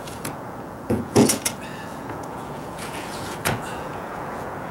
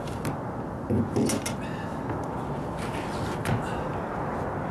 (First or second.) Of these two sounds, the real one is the second